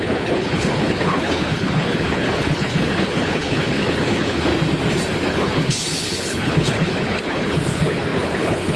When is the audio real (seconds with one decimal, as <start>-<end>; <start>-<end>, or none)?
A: 4.5-5.3